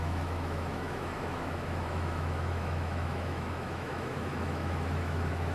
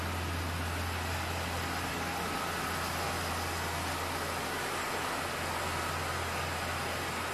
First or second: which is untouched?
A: second